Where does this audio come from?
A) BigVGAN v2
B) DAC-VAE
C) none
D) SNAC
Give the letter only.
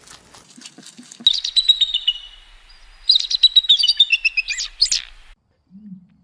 C